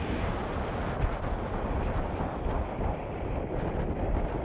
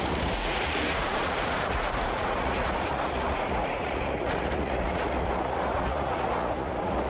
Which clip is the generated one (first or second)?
second